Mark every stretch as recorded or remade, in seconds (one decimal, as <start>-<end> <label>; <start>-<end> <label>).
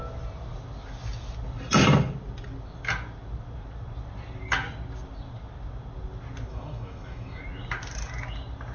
0.0-6.5 recorded; 6.5-7.4 remade; 7.4-8.7 recorded